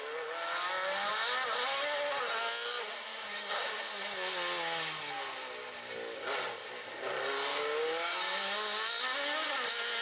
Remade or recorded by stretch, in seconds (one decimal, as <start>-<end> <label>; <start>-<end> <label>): 0.0-3.1 recorded; 3.1-3.8 remade; 3.8-7.5 recorded; 7.5-8.9 remade; 8.9-10.0 recorded